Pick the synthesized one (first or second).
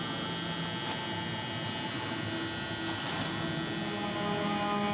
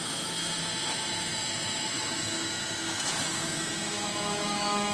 second